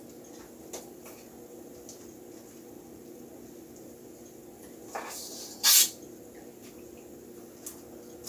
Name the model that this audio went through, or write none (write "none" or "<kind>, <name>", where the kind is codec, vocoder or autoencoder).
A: none